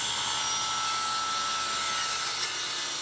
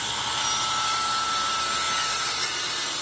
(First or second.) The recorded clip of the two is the first